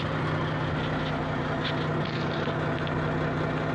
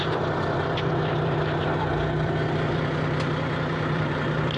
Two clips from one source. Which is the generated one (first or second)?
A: second